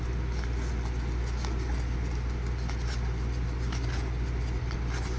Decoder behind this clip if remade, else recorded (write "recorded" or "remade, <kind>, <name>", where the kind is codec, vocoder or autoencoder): recorded